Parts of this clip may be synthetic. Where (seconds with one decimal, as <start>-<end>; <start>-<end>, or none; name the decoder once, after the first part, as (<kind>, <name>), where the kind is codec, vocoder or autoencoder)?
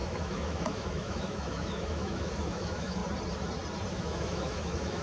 0.0-3.0 (autoencoder, DAC-VAE); 3.9-5.0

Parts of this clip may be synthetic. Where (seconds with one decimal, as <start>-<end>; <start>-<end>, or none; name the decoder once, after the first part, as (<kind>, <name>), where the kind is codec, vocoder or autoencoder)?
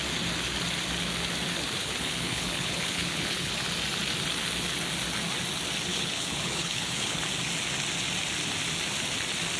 1.8-3.5 (codec, HILCodec); 5.9-7.2